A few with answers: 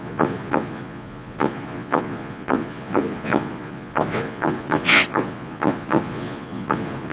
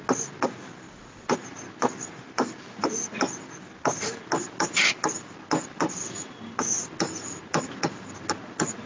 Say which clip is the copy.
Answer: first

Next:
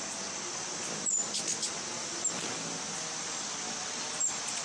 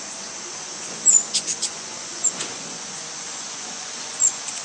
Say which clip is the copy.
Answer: second